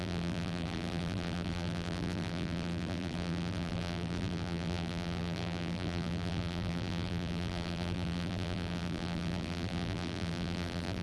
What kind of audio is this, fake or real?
fake